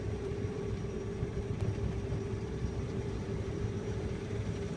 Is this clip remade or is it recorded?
remade